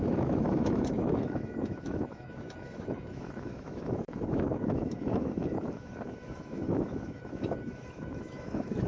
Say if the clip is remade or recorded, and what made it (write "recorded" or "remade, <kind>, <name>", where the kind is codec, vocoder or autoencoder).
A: remade, autoencoder, DAC-VAE